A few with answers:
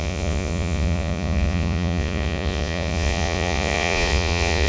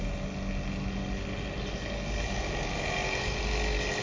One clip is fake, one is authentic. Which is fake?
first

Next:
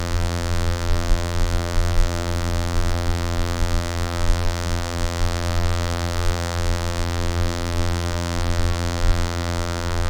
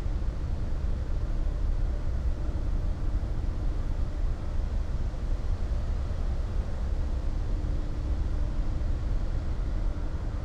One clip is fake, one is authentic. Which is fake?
first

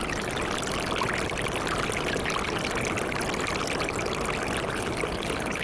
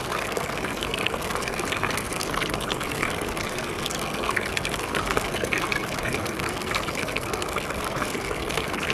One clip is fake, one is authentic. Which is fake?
second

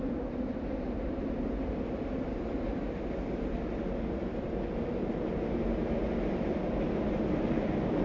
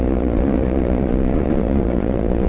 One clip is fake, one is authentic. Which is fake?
second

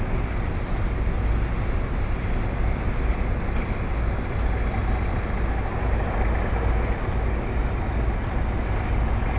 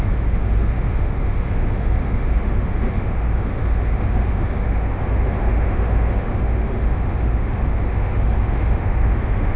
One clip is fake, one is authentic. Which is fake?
second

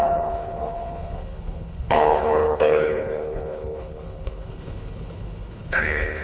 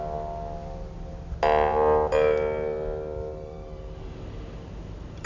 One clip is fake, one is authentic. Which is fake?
first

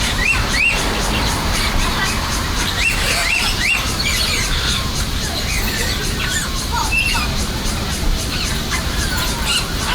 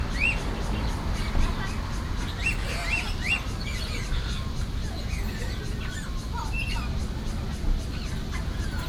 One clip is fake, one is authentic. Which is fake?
first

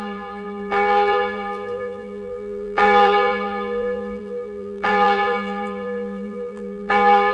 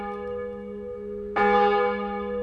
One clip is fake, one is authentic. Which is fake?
first